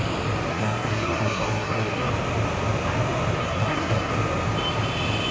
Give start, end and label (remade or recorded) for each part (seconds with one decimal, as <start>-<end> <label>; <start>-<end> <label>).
0.0-0.5 recorded; 0.5-2.1 remade; 2.1-3.4 recorded; 3.4-4.1 remade; 4.1-5.3 recorded